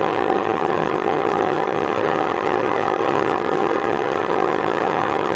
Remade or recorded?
remade